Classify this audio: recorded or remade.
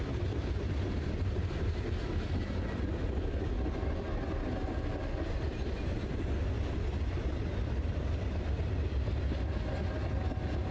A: recorded